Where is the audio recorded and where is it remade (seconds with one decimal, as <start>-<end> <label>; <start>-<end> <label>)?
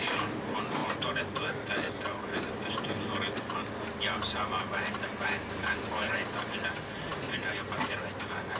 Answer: 0.0-8.6 recorded